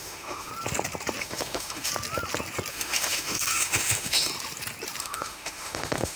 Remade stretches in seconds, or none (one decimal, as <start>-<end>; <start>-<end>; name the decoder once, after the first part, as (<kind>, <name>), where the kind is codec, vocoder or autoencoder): 0.0-0.5 (autoencoder, DAC-VAE); 1.2-1.9; 2.7-4.3; 5.0-6.2